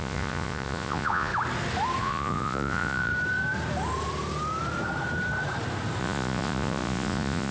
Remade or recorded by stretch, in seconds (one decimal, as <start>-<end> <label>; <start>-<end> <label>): 0.0-1.3 remade; 1.3-2.0 recorded; 2.0-3.1 remade; 3.1-6.0 recorded; 6.0-7.5 remade